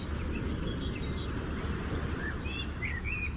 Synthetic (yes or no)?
no